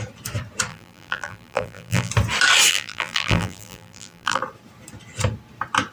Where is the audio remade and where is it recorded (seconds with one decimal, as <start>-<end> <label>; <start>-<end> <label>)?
0.0-0.7 recorded; 0.7-2.1 remade; 2.1-2.7 recorded; 2.7-4.4 remade; 4.4-5.9 recorded

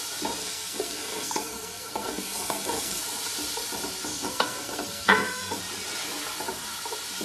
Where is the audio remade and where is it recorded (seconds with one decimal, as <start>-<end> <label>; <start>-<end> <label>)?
0.0-0.4 recorded; 0.4-3.0 remade; 3.0-4.1 recorded; 4.1-5.6 remade; 5.6-7.2 recorded

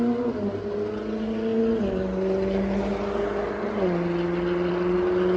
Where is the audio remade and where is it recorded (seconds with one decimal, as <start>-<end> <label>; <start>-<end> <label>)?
0.0-5.4 recorded

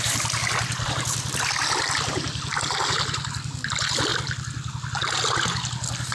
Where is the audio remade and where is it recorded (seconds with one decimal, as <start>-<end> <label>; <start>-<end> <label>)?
0.0-6.1 recorded